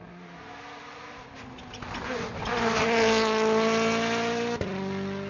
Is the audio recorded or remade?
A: recorded